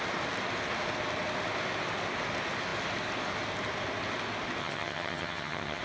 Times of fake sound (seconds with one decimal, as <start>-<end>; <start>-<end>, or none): 4.6-5.8